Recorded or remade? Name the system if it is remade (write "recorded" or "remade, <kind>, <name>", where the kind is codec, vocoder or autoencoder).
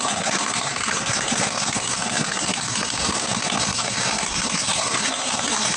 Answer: remade, codec, SNAC